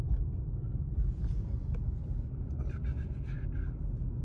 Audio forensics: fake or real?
real